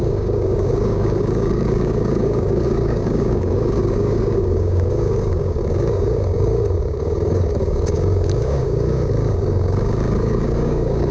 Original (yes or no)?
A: no